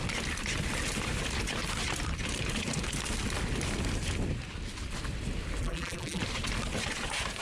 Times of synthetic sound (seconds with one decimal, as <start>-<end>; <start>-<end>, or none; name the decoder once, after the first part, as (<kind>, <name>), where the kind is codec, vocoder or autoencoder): 5.6-6.2 (vocoder, BigVGAN v2)